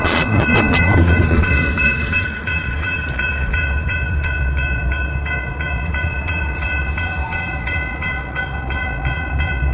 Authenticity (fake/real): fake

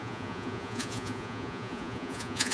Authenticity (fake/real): fake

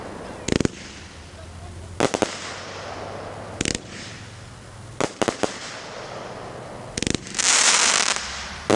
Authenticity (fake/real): real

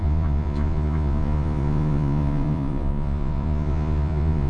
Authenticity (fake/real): fake